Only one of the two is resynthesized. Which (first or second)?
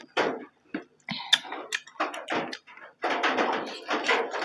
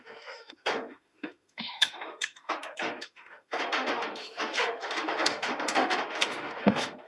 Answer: second